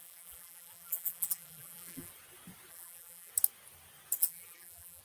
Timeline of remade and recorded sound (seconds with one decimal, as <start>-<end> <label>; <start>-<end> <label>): 0.0-2.1 remade; 2.1-2.7 recorded; 2.7-3.3 remade; 3.3-4.2 recorded; 4.2-5.0 remade